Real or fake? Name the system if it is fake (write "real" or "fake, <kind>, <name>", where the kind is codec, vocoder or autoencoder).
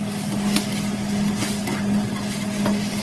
real